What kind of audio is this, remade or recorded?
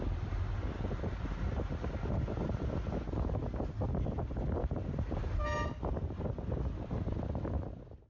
recorded